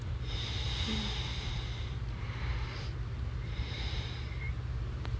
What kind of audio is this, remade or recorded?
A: remade